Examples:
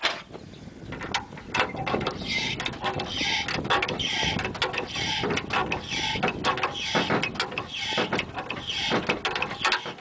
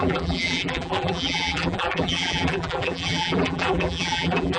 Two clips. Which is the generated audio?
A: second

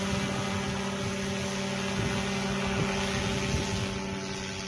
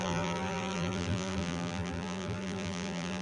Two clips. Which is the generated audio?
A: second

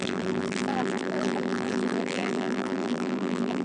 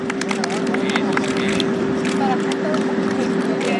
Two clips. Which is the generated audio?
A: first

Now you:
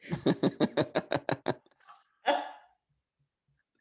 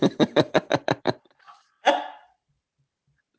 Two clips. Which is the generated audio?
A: second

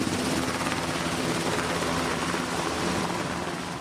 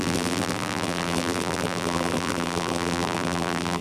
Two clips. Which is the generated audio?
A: second